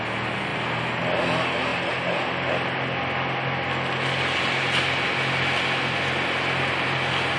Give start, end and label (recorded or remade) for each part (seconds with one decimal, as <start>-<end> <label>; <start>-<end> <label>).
0.0-7.4 recorded